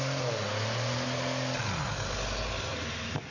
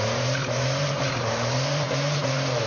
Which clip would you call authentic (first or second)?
first